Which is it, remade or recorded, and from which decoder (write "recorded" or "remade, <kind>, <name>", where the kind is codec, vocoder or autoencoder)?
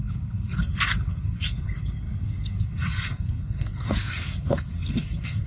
remade, codec, SNAC